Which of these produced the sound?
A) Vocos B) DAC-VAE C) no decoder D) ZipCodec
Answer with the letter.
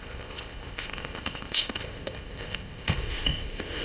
D